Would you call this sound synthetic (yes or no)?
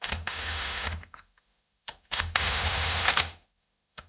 yes